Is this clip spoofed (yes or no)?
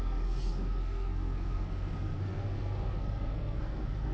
yes